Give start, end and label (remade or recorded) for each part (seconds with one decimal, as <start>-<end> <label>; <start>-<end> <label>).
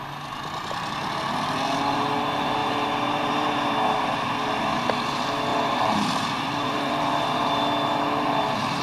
0.0-2.6 recorded; 2.6-3.5 remade; 3.5-5.5 recorded; 5.5-8.8 remade